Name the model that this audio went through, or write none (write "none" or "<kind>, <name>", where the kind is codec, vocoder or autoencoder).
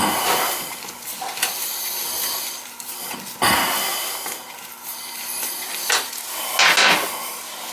none